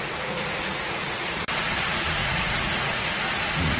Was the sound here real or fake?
fake